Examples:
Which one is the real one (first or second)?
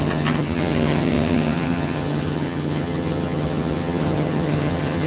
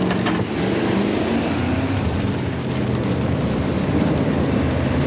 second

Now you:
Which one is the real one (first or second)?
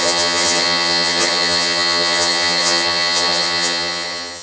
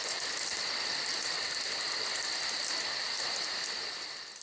second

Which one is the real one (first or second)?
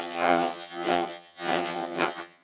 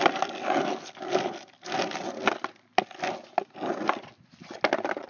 second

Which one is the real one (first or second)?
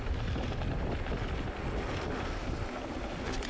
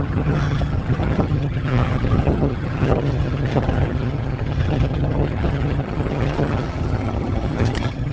first